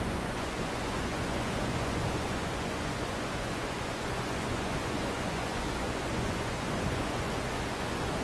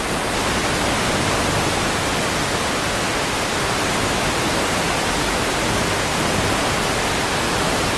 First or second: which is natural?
second